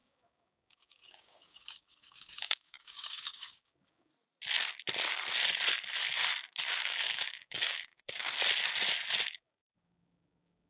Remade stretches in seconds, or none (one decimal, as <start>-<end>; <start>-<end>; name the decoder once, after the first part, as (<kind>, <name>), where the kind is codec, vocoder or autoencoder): 0.0-4.1 (codec, DAC); 6.7-8.2; 9.2-10.7